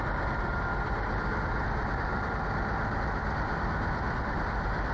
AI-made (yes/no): no